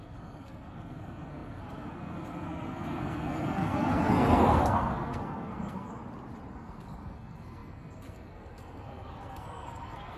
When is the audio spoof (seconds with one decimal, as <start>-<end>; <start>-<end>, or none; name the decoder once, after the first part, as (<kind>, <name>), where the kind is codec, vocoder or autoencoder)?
0.0-5.9 (codec, SNAC); 6.5-10.2